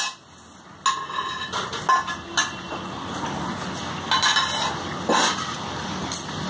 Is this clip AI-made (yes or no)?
no